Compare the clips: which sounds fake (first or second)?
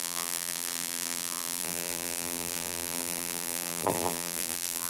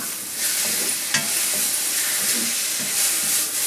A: first